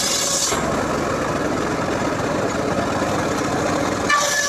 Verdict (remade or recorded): recorded